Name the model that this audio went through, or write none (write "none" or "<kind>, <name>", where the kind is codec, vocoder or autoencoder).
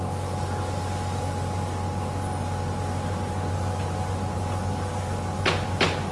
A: none